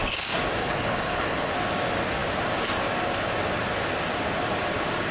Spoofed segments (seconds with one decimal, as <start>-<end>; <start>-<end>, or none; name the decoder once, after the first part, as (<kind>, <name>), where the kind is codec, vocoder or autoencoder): 0.6-1.5 (codec, HILCodec)